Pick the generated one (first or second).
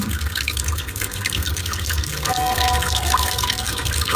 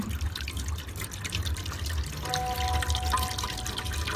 first